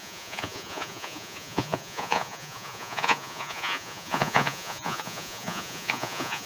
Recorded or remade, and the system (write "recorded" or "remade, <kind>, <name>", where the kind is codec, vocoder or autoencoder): remade, vocoder, Vocos